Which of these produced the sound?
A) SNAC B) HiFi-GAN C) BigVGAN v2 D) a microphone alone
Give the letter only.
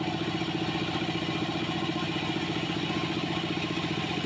D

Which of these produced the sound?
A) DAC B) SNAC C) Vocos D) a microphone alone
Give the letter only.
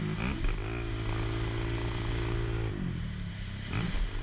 D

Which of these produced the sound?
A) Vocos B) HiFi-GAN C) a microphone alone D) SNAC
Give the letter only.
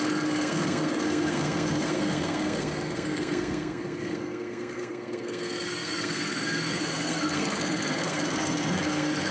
D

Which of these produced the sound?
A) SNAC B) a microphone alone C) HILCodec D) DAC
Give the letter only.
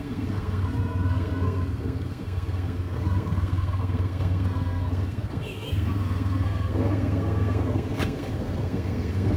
A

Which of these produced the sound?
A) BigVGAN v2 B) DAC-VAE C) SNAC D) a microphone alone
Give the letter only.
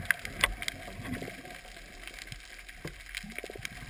D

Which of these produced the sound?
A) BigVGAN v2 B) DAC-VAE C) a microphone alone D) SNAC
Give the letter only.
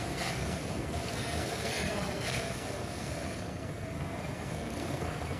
D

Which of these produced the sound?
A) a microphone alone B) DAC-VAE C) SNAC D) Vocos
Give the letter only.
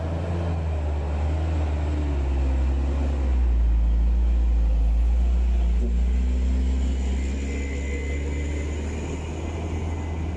A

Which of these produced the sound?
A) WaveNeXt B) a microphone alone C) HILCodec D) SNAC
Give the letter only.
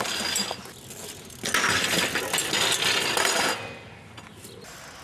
B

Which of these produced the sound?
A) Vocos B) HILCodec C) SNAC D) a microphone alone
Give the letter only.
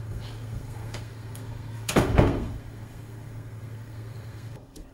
C